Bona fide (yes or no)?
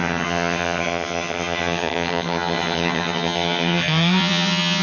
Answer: no